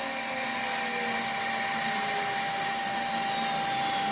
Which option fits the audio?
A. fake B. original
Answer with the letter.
B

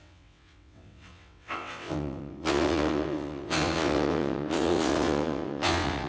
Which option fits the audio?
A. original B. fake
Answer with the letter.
B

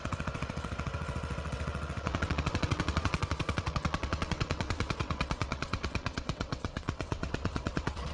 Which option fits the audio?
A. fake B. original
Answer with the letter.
A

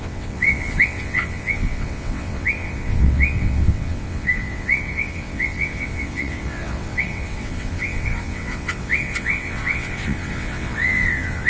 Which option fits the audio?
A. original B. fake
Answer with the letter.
B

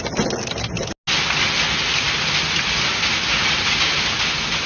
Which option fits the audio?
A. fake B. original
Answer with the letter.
B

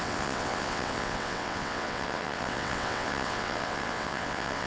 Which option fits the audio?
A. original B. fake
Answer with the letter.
B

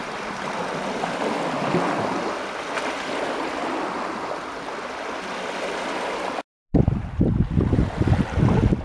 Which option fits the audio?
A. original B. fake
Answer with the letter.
A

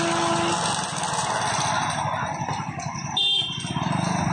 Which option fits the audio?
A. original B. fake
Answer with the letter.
A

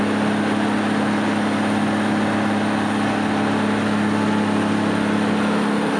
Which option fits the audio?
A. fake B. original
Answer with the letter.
B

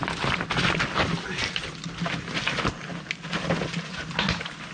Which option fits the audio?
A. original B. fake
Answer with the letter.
A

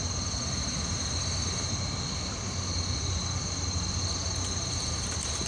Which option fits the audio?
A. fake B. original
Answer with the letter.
B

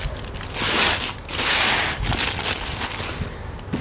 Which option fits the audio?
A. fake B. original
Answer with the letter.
B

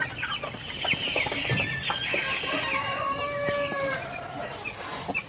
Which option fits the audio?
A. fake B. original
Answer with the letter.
B